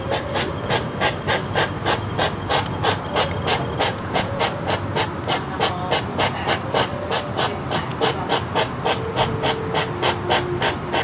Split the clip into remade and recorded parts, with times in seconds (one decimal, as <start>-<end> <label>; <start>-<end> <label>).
0.0-3.9 recorded; 3.9-4.4 remade; 4.4-11.0 recorded